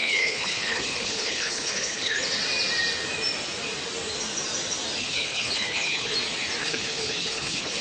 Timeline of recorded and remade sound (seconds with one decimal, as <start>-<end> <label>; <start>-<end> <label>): 0.0-2.2 remade; 2.2-5.0 recorded; 5.0-6.1 remade; 6.1-6.6 recorded; 6.6-7.8 remade

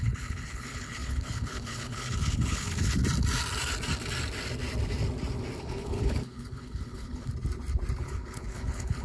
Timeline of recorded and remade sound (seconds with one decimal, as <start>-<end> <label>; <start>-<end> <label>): 0.0-3.0 remade; 3.0-5.6 recorded; 5.6-7.3 remade; 7.3-8.0 recorded; 8.0-9.0 remade

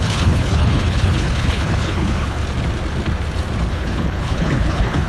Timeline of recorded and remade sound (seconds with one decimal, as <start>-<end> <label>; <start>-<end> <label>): 0.0-2.4 remade; 2.4-3.7 recorded; 3.7-5.1 remade

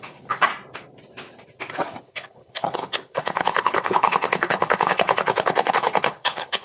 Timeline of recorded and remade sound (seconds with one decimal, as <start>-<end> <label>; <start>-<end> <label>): 0.0-0.5 remade; 0.5-2.0 recorded; 2.0-6.6 remade

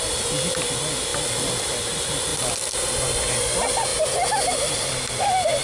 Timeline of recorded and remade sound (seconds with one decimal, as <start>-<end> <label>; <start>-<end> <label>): 0.0-5.6 recorded